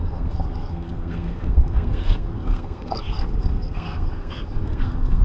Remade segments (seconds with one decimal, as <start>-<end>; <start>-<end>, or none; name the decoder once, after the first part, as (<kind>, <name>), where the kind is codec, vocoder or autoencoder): 0.0-5.2 (codec, SNAC)